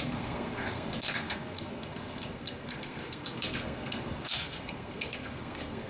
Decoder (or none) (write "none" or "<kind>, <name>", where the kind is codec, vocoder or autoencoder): codec, SNAC